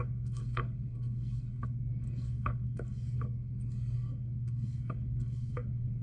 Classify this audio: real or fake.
fake